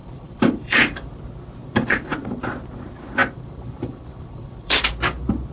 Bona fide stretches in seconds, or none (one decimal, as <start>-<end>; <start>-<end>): 1.1-1.7; 2.4-3.2; 4.9-5.5